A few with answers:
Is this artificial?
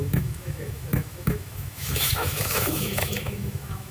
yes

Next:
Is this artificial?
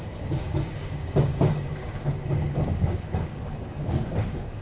yes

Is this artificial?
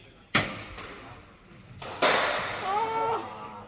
no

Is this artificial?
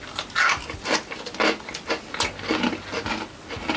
no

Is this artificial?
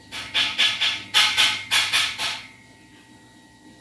no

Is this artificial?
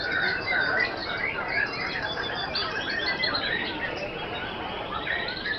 yes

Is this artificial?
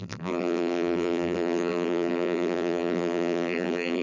yes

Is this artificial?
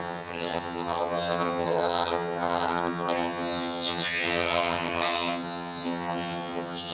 yes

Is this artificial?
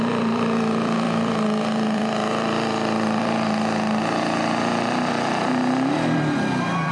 yes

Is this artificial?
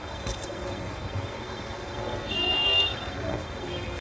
yes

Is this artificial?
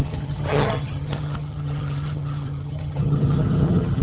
yes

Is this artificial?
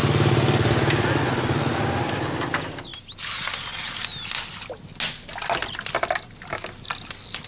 no